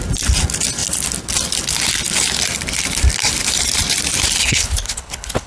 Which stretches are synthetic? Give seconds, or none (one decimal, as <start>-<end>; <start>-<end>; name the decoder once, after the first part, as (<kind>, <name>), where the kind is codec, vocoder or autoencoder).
4.4-5.5 (codec, HILCodec)